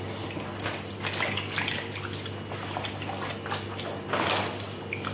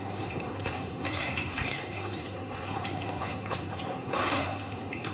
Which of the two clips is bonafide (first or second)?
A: first